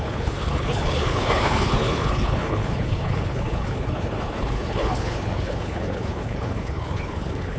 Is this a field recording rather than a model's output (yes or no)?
no